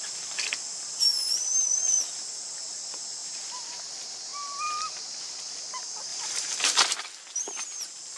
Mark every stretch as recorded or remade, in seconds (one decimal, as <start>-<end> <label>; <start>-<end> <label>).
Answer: 0.0-3.2 recorded; 3.2-3.7 remade; 3.7-6.1 recorded; 6.1-6.8 remade; 6.8-8.2 recorded